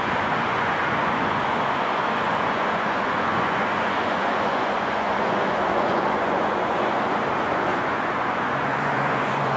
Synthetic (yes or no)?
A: yes